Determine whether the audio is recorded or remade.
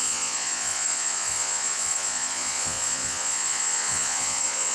remade